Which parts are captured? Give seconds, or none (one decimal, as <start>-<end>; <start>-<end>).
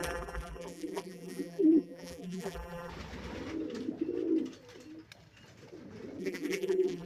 2.9-6.2